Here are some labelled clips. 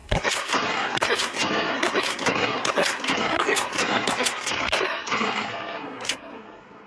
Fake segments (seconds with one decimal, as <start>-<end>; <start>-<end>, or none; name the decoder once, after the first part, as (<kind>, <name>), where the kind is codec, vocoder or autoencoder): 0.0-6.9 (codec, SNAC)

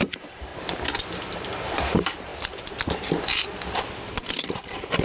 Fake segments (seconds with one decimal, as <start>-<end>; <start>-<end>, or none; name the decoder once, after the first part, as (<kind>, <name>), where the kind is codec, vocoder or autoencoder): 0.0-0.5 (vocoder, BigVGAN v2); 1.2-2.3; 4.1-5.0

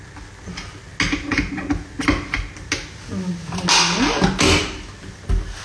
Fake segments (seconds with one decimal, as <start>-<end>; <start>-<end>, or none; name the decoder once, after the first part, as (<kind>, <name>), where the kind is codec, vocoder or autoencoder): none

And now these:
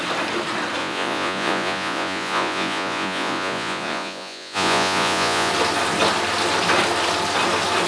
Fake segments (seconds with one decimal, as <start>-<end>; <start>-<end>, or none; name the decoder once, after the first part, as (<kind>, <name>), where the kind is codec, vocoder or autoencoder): 0.8-5.5 (vocoder, Vocos)

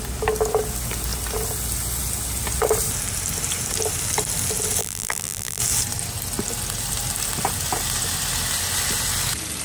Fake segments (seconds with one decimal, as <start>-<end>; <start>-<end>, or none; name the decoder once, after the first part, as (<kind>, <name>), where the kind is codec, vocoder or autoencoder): 4.8-5.6 (vocoder, BigVGAN v2)

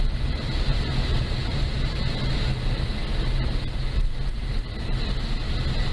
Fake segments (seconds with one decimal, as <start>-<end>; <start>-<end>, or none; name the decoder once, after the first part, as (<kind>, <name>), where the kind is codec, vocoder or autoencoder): 0.7-2.3 (vocoder, BigVGAN v2)

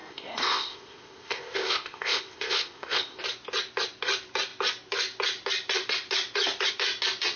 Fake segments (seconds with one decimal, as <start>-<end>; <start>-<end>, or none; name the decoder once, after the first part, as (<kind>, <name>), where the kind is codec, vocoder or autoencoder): 0.0-3.2 (codec, ZipCodec)